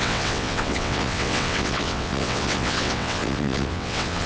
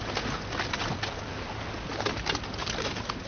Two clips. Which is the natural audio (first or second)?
second